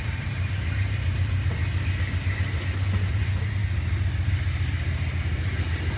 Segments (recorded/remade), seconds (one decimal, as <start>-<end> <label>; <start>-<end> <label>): 0.0-1.6 remade; 1.6-3.1 recorded; 3.1-3.6 remade; 3.6-5.2 recorded; 5.2-6.0 remade